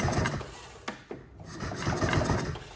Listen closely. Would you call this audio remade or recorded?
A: recorded